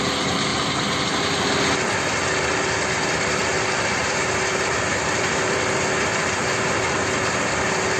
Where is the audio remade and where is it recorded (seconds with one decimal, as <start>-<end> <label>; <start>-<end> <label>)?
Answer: 0.0-8.0 recorded